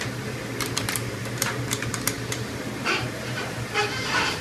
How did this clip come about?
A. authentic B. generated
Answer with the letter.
B